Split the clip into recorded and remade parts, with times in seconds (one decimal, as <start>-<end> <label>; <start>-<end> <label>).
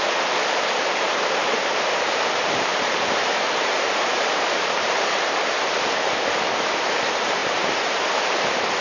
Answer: 0.0-8.8 remade